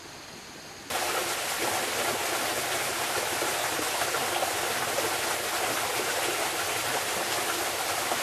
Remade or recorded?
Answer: recorded